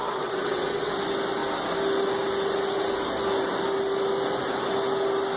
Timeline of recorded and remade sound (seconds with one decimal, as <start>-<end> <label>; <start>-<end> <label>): 0.0-0.9 remade; 0.9-5.4 recorded